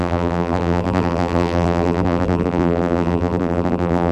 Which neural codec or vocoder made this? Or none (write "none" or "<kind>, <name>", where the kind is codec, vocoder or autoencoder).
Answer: vocoder, BigVGAN v2